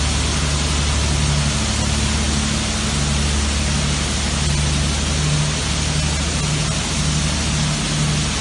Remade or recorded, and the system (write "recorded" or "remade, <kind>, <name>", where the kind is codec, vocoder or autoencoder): recorded